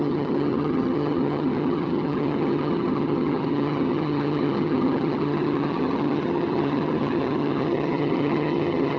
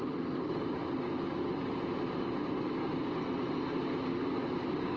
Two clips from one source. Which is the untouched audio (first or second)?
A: second